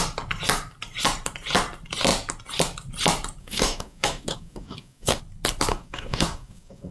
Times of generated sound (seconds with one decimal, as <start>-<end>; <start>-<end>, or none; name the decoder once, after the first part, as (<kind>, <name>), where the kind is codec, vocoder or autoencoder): 3.4-5.2 (codec, DAC); 5.7-6.9